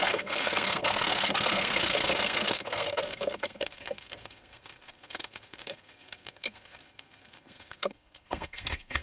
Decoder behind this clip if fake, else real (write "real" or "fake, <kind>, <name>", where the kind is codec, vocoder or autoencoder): fake, codec, SNAC